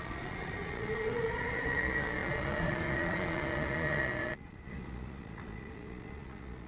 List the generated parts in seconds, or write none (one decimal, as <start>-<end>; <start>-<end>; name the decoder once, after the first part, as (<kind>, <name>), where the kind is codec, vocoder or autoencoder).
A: 0.0-6.7 (vocoder, Vocos)